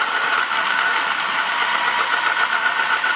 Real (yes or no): yes